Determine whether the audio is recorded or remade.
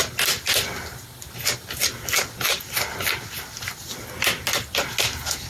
recorded